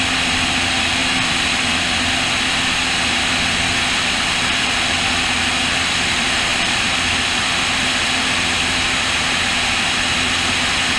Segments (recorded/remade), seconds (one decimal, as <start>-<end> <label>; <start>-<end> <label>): 0.0-6.5 recorded; 6.5-7.8 remade; 7.8-11.0 recorded